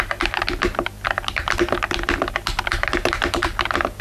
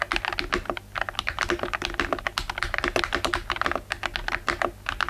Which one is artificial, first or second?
first